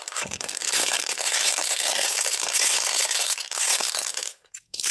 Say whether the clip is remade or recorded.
remade